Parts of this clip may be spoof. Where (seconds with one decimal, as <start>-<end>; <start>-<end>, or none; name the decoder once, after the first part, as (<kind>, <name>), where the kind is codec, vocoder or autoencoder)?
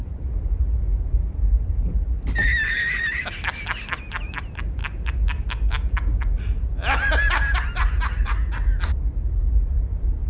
0.0-4.8 (vocoder, BigVGAN v2); 9.3-10.3